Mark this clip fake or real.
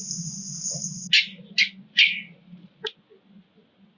real